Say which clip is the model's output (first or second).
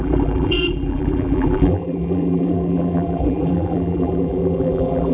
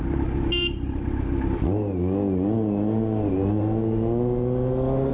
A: first